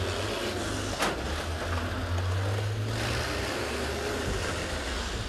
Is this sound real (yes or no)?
yes